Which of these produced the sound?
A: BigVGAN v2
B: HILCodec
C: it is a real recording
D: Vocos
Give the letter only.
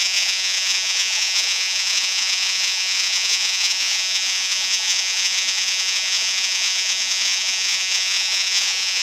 D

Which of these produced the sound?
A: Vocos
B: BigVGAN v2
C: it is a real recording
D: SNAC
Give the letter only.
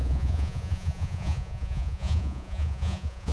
A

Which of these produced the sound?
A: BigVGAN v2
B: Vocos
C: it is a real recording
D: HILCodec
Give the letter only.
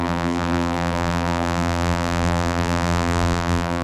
A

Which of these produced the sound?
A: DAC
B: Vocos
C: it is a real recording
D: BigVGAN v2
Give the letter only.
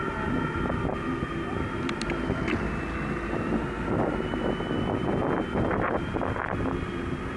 C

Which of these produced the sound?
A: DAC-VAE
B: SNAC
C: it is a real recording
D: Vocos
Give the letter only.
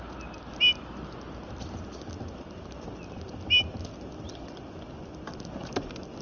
C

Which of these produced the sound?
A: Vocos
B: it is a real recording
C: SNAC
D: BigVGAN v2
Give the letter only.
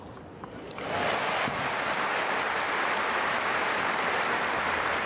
B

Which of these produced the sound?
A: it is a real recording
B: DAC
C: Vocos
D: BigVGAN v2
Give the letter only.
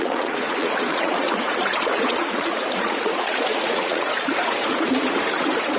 C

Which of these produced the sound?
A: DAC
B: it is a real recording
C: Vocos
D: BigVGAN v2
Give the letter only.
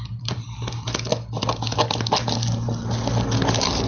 B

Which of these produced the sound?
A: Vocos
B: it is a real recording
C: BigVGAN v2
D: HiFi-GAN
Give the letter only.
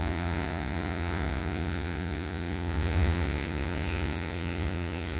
A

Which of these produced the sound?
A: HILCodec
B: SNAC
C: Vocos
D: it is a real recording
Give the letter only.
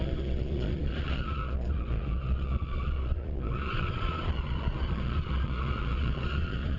C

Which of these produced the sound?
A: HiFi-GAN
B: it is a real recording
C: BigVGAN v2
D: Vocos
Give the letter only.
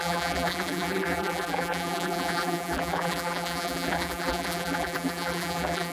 C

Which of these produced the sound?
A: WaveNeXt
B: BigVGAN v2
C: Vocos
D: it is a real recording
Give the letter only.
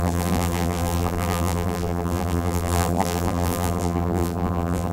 B